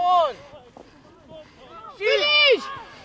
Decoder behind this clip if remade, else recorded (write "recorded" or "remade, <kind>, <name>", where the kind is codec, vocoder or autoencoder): recorded